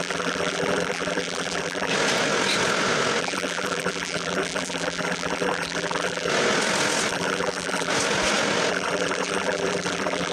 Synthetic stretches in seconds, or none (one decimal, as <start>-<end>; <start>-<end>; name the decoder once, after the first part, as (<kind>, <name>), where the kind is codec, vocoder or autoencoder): 0.0-1.9 (vocoder, BigVGAN v2); 3.2-6.3; 7.1-7.9; 8.7-10.3